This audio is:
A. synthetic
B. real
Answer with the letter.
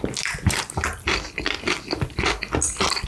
B